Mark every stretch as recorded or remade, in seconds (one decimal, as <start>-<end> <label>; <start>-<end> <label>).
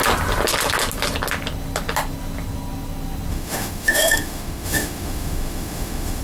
0.0-3.3 recorded; 3.3-6.2 remade